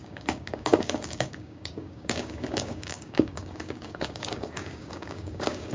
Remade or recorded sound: remade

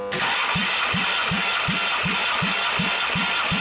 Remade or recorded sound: recorded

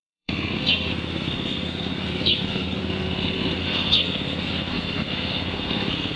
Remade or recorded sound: remade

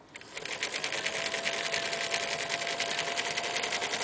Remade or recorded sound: recorded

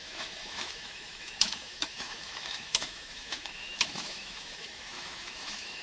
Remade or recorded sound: remade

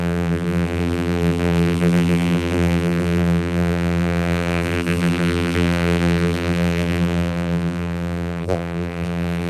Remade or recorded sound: remade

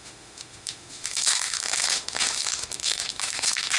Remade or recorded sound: remade